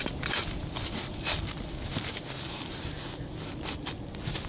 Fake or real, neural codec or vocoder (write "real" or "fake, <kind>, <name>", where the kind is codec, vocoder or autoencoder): real